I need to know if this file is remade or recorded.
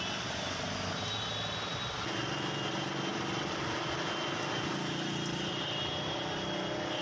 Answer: recorded